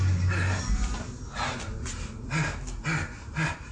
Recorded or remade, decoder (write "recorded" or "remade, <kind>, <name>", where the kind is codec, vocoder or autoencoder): recorded